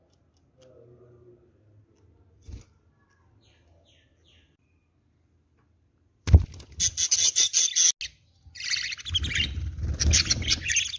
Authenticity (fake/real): real